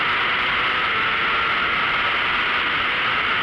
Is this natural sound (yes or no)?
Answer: yes